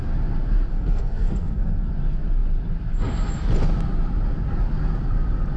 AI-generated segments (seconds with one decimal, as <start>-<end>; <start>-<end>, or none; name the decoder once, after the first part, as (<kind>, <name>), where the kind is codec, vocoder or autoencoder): 0.7-1.9 (codec, SNAC)